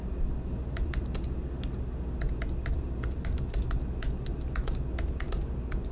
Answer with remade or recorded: recorded